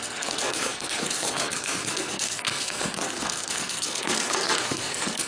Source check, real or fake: fake